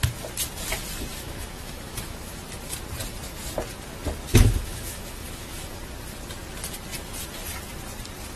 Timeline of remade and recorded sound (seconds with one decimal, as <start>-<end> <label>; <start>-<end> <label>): 0.0-1.1 recorded; 1.1-2.4 remade; 2.4-4.3 recorded; 4.3-5.8 remade; 5.8-8.4 recorded